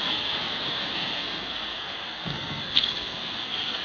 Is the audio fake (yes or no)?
yes